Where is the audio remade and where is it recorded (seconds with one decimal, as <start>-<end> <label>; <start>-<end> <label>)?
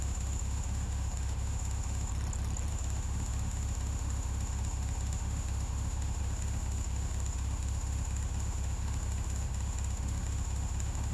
0.0-2.1 remade; 2.1-2.7 recorded; 2.7-11.1 remade